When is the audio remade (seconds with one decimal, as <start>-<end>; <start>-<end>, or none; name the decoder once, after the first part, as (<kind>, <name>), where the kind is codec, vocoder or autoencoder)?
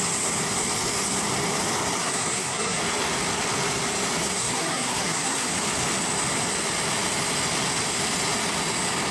2.0-2.8 (codec, SNAC); 4.2-5.5